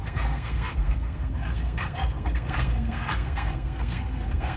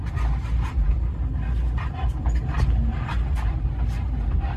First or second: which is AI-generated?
first